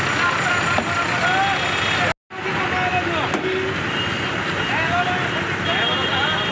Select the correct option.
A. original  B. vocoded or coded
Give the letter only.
A